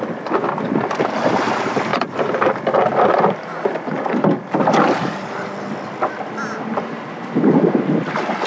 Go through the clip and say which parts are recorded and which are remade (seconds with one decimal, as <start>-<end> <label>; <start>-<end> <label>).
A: 0.0-8.5 recorded